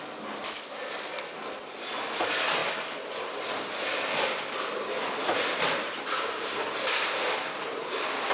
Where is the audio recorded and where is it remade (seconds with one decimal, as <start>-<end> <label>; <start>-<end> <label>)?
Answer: 0.0-2.6 recorded; 2.6-3.4 remade; 3.4-8.3 recorded